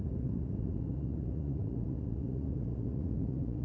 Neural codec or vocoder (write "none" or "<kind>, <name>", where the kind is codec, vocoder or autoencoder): vocoder, Vocos